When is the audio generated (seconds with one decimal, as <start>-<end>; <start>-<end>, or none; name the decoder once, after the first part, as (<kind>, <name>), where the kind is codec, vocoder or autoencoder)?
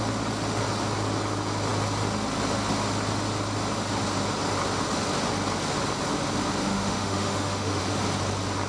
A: 6.6-7.8 (autoencoder, DAC-VAE)